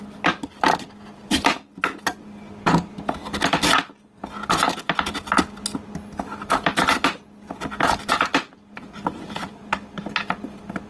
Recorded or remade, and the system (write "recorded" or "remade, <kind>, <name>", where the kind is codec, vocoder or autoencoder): recorded